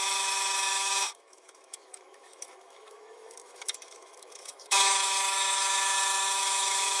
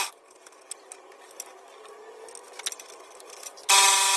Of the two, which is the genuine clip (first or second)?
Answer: second